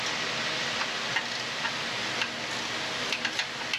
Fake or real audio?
real